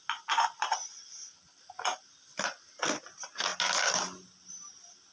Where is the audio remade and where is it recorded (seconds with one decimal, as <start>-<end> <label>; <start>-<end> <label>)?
0.0-5.1 recorded